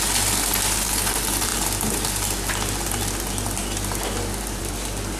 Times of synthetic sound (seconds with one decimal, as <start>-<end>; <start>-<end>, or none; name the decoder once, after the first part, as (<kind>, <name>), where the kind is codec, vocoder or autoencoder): none